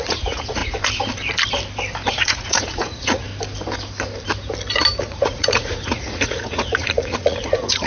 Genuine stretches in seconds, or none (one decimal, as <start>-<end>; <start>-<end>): 0.6-2.1; 3.3-5.0